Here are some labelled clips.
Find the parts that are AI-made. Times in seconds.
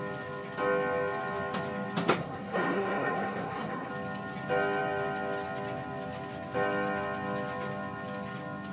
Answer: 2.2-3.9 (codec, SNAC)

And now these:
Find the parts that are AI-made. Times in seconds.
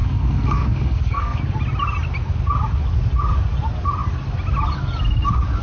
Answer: 0.0-1.4 (codec, SNAC)